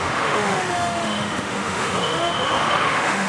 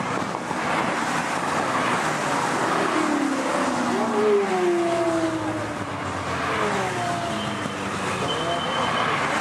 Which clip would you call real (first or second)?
second